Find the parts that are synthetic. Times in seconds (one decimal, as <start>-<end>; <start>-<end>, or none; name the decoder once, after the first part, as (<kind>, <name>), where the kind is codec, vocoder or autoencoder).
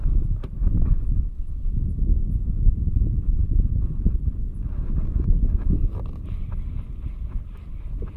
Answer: none